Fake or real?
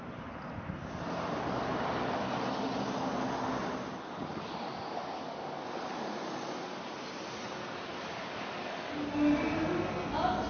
real